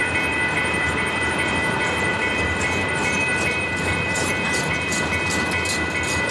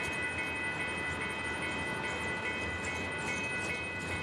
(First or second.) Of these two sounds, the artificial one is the first